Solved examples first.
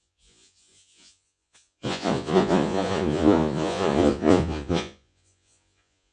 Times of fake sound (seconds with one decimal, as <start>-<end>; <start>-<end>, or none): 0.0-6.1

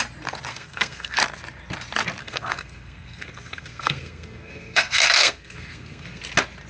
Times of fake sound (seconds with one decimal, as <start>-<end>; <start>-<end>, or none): 0.5-1.2; 2.2-6.2

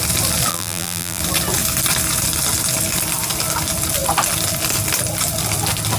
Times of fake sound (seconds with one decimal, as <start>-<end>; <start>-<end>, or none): 0.5-1.2

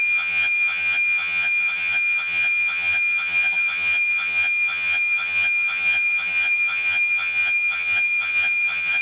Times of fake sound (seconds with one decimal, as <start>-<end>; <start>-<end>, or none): 0.0-9.0